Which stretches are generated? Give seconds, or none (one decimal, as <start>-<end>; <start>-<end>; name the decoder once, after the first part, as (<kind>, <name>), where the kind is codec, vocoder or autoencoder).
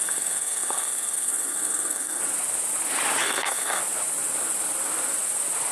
0.0-2.2 (codec, SNAC); 3.2-3.8